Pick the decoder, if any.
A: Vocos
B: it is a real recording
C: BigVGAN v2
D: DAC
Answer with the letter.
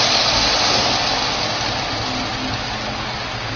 B